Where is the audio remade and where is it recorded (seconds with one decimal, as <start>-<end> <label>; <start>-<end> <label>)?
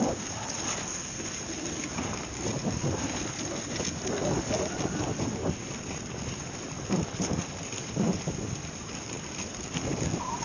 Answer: 0.0-0.8 recorded; 0.8-1.4 remade; 1.4-10.4 recorded